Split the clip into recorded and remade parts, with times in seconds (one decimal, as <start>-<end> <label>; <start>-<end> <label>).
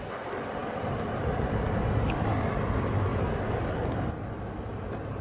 0.0-5.2 recorded